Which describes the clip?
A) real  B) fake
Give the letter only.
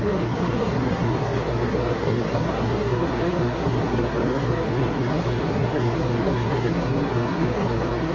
B